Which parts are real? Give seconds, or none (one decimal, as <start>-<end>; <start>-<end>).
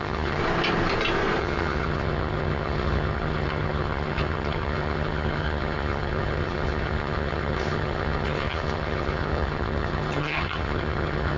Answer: 0.4-1.4